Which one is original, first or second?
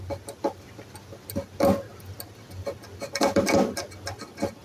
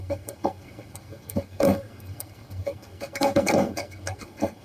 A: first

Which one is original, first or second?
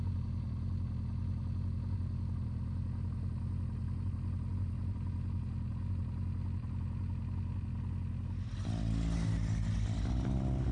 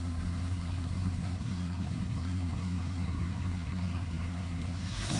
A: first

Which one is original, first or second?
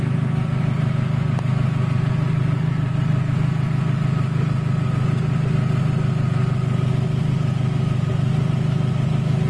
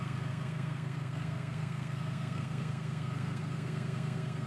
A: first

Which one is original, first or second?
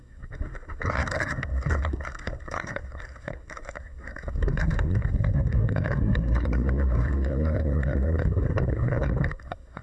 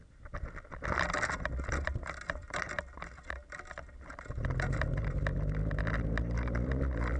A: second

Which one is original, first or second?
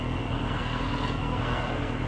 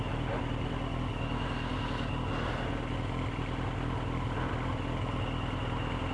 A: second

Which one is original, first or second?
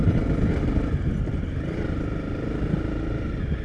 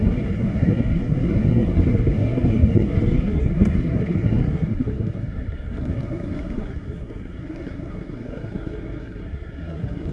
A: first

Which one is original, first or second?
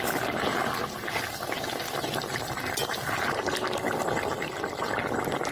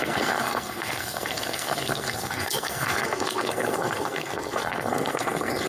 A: first